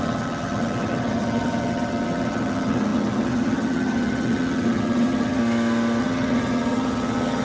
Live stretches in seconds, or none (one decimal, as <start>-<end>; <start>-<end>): 5.4-6.0